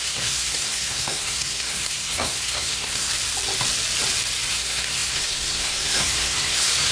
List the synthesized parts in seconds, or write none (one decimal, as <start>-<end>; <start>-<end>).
0.0-3.1; 4.5-6.9